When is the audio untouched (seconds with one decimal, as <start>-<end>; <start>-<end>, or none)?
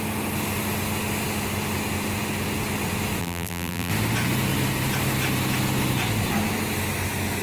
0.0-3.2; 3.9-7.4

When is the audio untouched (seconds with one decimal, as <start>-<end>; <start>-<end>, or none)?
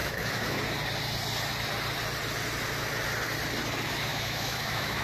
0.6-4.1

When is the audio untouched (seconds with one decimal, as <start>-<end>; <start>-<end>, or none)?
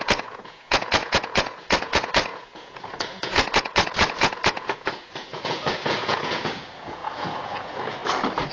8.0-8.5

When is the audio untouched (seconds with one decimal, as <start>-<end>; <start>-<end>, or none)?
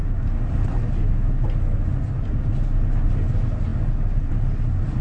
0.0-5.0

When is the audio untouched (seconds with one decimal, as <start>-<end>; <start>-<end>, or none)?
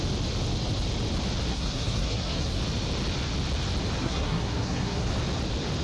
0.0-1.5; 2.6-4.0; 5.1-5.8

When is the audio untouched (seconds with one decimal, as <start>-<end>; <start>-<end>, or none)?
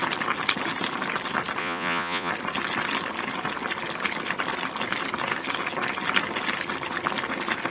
0.0-1.6; 2.3-7.7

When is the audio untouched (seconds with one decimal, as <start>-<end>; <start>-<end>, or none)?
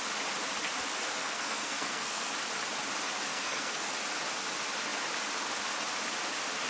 0.0-1.2; 2.3-3.3; 3.9-6.7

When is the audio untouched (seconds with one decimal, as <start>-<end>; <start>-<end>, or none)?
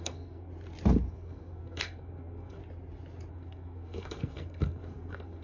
0.5-1.1; 2.6-3.3